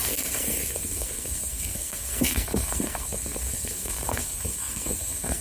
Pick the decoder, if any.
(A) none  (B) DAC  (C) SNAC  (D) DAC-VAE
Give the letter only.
C